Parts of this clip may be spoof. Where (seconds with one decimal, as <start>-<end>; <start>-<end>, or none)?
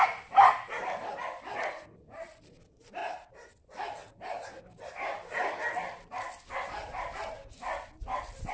none